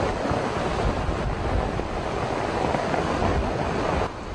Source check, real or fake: real